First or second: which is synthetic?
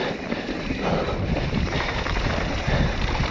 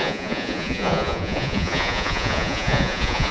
second